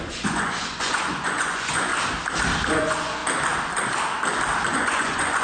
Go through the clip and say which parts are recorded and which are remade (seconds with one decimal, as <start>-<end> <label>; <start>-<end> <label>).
0.0-1.9 remade; 1.9-2.7 recorded; 2.7-3.2 remade; 3.2-4.7 recorded; 4.7-5.4 remade